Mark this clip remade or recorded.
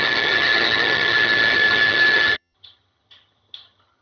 remade